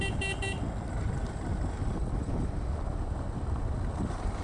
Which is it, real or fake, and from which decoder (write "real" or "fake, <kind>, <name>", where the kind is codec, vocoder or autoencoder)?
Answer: real